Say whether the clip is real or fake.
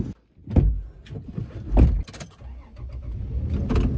real